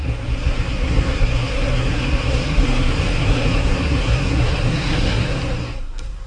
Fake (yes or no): yes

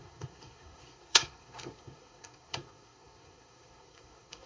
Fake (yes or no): yes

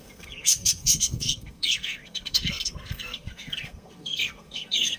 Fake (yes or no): yes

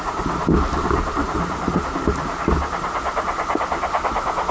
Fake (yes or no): no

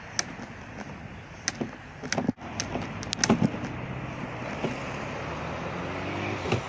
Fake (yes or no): no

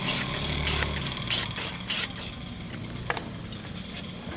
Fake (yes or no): no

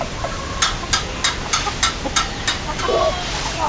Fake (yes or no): no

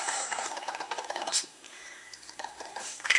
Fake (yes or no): yes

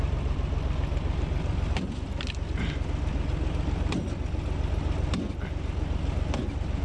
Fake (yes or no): no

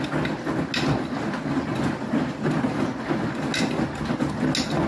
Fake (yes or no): no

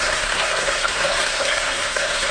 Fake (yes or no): yes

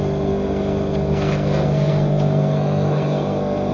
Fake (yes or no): yes